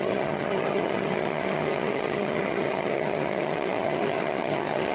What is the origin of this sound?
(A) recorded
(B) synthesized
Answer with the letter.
B